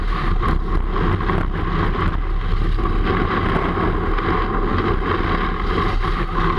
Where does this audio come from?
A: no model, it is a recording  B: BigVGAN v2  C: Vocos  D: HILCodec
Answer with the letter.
A